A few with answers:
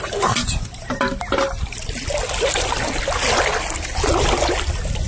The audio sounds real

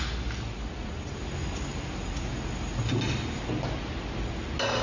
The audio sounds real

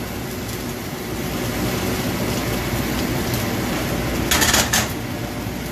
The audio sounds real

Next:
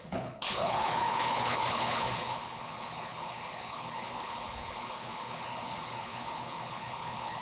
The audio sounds fake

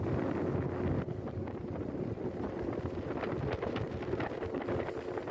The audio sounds real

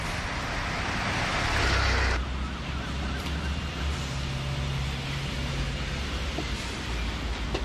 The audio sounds real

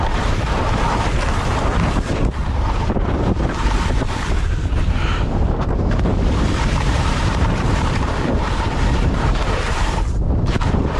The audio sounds fake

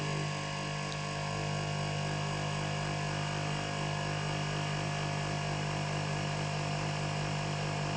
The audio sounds real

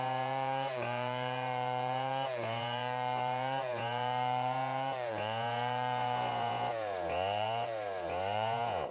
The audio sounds fake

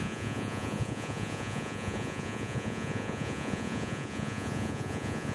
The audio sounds fake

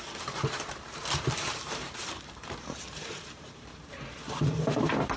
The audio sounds fake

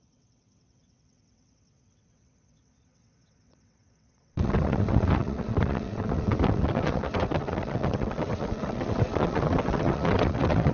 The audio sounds fake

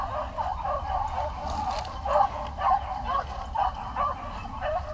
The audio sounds real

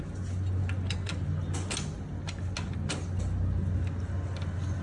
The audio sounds real